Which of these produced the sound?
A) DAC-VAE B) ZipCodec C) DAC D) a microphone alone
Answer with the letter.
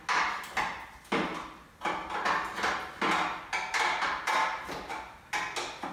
D